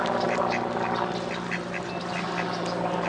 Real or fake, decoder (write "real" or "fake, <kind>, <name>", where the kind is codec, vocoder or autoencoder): real